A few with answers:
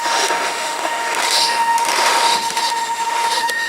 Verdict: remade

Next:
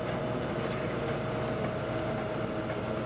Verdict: recorded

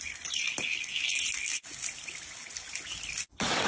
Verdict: recorded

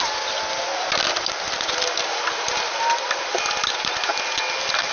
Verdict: recorded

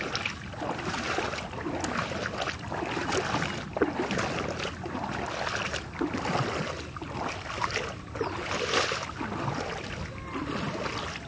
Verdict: recorded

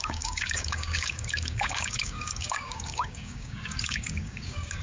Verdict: remade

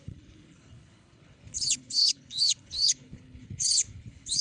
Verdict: remade